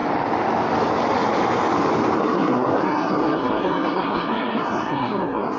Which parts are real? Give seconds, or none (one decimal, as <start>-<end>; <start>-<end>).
0.0-2.2